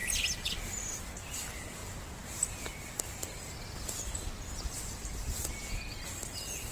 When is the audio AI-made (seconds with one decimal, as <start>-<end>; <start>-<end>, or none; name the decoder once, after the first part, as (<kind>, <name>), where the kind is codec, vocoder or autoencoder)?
none